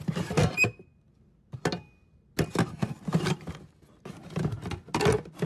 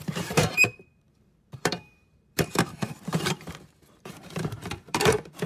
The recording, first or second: first